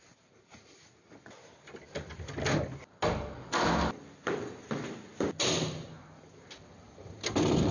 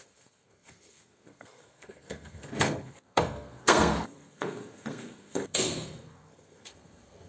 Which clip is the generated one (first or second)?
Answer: second